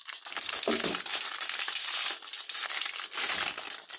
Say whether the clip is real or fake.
fake